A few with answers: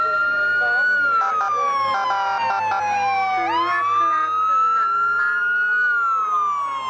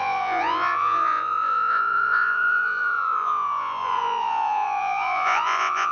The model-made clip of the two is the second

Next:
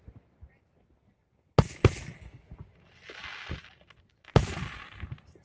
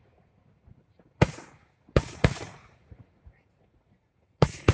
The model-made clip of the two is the second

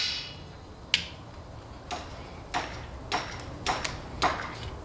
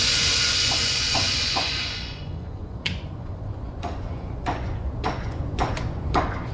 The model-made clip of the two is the second